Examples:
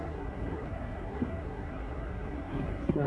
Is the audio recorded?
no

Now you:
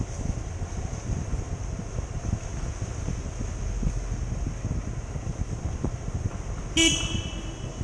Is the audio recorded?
yes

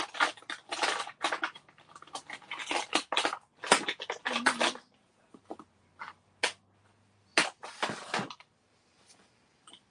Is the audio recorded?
yes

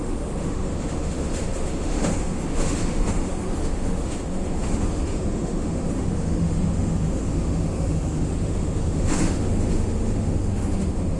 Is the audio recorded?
no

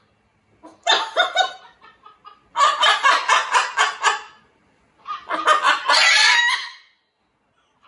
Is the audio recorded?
yes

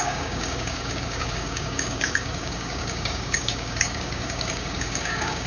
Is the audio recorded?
no